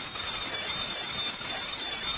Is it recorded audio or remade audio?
recorded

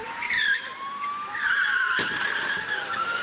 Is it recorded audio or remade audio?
remade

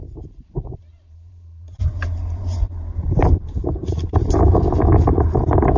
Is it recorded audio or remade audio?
remade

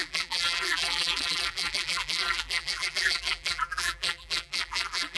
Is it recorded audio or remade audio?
remade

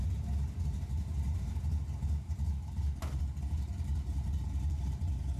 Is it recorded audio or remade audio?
remade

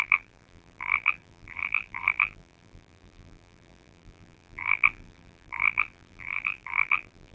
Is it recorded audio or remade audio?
remade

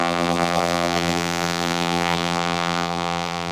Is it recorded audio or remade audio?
remade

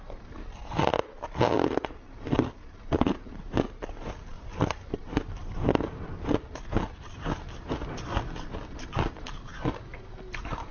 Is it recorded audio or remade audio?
recorded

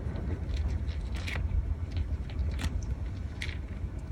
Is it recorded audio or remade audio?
remade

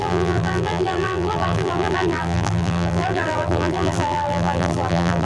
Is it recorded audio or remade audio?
remade